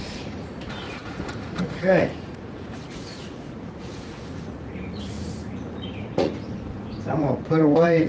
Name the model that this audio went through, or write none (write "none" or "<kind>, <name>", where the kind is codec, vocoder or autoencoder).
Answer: vocoder, Vocos